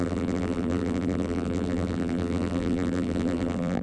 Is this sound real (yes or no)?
no